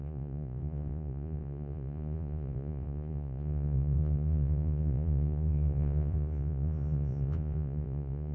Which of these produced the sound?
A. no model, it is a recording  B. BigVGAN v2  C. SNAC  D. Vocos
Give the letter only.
D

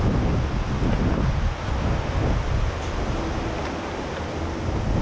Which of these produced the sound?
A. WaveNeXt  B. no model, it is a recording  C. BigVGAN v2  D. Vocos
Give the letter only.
B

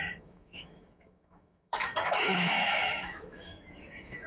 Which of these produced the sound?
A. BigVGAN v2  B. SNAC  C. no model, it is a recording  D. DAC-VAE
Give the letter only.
D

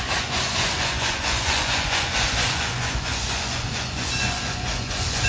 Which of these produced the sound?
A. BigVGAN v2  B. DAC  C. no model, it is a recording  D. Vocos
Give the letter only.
D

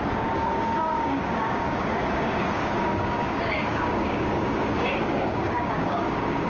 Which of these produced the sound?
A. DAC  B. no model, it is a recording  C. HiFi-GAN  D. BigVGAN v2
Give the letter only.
A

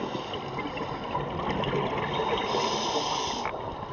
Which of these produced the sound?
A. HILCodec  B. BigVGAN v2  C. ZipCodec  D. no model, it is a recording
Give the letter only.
D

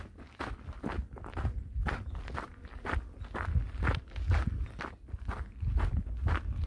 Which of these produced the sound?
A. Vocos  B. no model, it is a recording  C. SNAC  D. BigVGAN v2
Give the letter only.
B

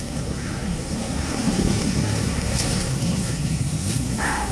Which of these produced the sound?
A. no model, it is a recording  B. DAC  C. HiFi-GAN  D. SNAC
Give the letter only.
D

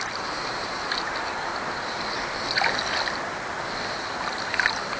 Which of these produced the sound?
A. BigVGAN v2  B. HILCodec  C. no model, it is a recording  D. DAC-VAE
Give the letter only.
A